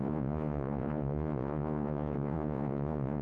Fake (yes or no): yes